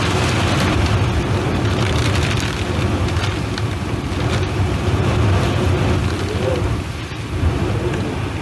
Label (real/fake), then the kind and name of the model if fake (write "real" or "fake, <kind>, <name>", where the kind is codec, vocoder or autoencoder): real